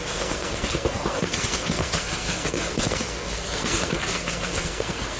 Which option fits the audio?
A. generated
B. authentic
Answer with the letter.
A